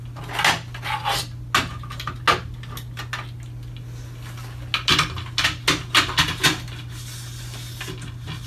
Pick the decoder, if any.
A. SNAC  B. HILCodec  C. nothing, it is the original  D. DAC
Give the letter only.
C